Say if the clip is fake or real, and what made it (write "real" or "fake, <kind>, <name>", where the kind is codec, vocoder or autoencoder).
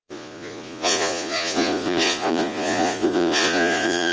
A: fake, vocoder, Vocos